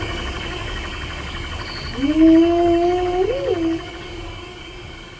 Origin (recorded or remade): remade